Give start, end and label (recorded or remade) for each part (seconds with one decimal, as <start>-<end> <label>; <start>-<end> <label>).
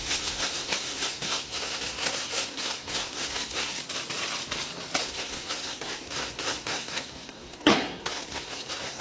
0.0-3.8 remade; 3.8-5.0 recorded; 5.0-9.0 remade